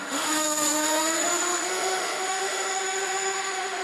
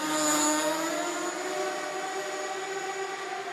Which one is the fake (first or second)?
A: first